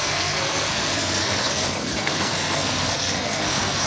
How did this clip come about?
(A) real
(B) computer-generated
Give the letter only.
B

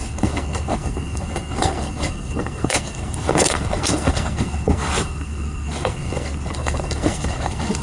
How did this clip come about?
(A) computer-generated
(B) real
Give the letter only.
A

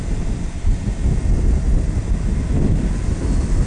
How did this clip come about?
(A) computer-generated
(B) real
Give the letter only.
B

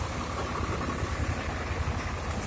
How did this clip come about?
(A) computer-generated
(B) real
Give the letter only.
B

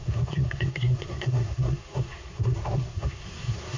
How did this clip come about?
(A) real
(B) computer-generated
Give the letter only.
B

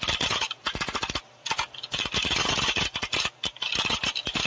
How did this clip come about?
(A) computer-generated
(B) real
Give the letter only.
B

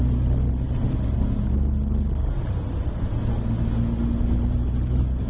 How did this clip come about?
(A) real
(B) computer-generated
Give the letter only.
A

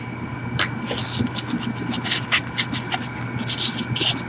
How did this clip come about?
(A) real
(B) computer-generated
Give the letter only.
A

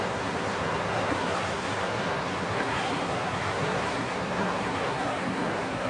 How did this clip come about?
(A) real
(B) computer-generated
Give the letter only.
B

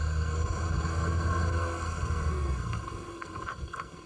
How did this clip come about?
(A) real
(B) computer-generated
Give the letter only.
B